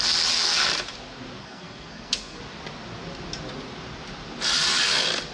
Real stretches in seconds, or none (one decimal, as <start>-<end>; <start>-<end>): 0.0-1.4; 2.4-5.3